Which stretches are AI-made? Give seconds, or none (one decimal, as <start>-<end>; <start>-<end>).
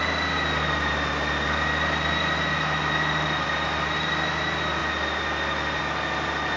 none